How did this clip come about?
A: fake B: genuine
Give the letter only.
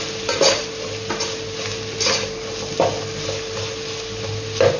B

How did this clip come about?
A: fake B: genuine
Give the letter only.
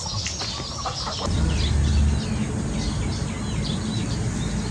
B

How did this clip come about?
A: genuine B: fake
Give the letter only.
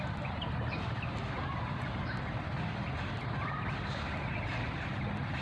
B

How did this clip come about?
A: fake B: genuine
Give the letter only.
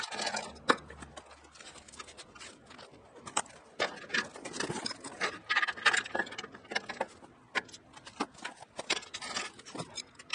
B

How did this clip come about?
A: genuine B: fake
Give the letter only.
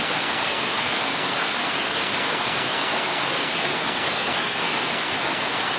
B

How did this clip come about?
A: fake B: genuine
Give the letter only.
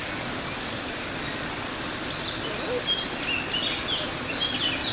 B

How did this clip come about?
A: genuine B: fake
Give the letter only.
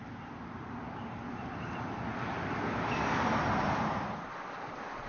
A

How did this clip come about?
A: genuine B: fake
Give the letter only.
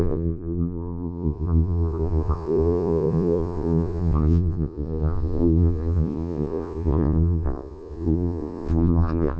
B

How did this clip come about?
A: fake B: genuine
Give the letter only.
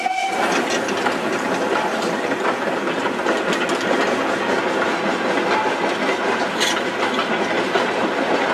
B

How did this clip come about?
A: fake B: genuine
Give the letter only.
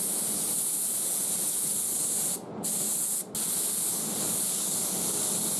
B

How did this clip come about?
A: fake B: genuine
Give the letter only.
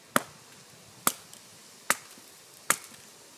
B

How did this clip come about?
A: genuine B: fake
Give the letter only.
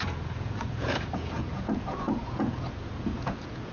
B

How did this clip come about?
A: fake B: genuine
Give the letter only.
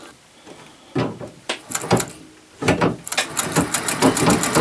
B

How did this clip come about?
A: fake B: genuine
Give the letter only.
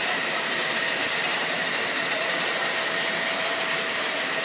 A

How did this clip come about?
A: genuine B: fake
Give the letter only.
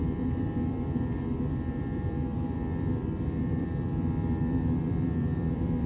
B